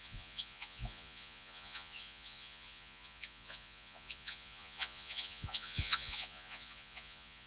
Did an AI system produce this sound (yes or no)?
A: yes